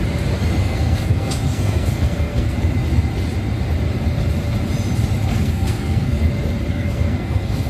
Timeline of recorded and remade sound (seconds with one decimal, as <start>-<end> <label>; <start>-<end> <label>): 0.0-0.6 recorded; 0.6-2.6 remade; 2.6-5.3 recorded; 5.3-6.2 remade; 6.2-6.7 recorded; 6.7-7.7 remade